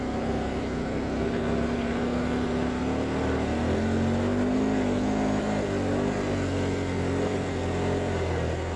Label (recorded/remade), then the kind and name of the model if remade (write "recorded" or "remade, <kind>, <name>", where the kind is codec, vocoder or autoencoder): recorded